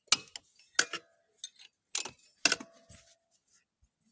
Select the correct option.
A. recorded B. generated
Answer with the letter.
A